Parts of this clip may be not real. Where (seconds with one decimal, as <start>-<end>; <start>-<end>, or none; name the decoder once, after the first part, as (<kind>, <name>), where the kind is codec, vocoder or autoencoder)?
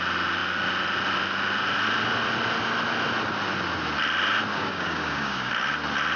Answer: 4.5-5.5 (codec, DAC)